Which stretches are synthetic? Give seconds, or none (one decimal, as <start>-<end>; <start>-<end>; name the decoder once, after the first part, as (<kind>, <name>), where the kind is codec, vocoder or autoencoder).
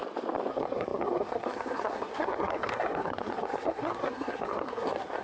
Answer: 0.5-5.2 (codec, SNAC)